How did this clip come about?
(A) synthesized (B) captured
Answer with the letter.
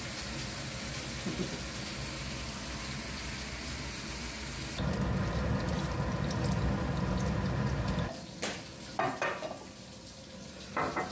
B